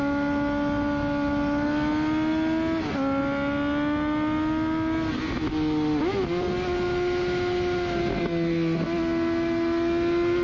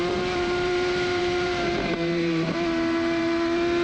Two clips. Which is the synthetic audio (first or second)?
second